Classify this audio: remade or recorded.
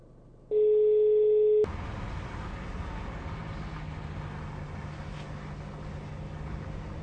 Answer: recorded